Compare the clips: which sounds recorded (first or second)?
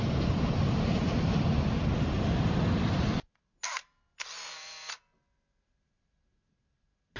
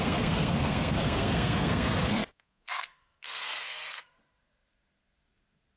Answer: first